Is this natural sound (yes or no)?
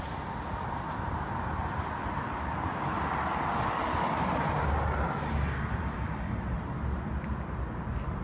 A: yes